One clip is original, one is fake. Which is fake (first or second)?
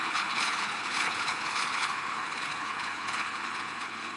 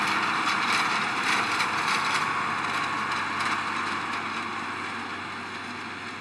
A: first